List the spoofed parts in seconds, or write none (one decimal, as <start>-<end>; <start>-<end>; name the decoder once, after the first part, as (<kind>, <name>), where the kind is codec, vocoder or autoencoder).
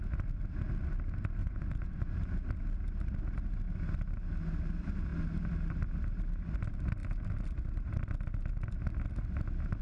1.4-2.1 (vocoder, Vocos)